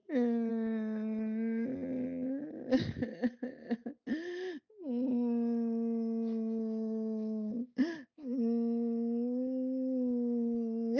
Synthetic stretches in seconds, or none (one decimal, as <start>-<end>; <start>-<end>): none